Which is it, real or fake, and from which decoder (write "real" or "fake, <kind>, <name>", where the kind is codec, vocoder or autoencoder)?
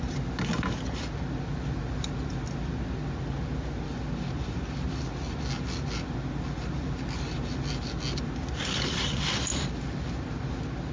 real